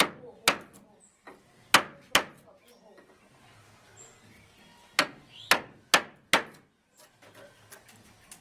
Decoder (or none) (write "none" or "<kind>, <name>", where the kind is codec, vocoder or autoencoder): none